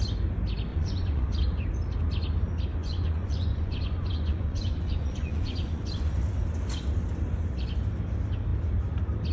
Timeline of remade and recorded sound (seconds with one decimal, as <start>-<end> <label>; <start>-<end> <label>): 0.0-0.7 recorded; 0.7-1.3 remade; 1.3-2.8 recorded; 2.8-6.1 remade; 6.1-9.3 recorded